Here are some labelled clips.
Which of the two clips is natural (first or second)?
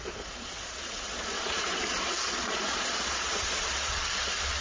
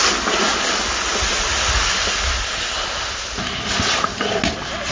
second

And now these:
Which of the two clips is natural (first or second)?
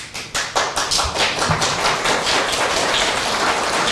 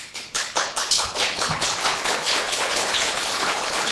first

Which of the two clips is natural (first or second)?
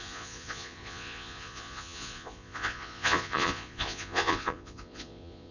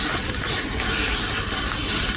second